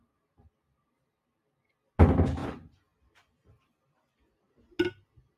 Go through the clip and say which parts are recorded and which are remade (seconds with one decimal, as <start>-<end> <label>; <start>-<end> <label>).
0.0-2.4 recorded; 2.4-4.5 remade; 4.5-5.4 recorded